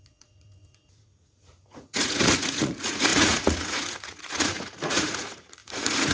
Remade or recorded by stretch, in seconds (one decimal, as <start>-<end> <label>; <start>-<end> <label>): 0.0-6.1 remade